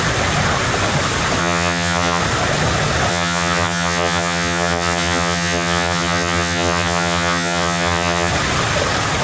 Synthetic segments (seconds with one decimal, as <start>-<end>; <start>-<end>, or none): 1.4-2.2; 3.1-8.3